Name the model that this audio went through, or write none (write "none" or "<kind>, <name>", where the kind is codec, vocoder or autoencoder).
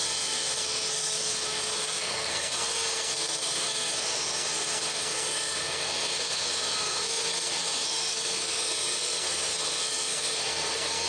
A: codec, SNAC